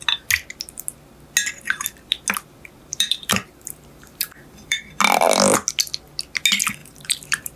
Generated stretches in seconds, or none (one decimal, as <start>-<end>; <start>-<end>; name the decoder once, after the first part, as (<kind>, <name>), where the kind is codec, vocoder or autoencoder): 2.9-4.8 (vocoder, BigVGAN v2); 6.8-7.6